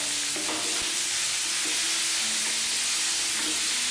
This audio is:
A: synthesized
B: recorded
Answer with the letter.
B